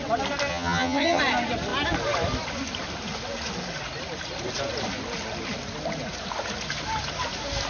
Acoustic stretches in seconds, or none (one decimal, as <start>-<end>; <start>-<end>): 0.0-0.5; 1.2-7.7